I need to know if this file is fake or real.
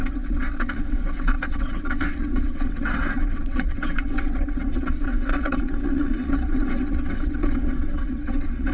fake